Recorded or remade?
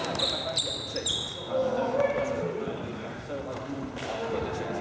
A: recorded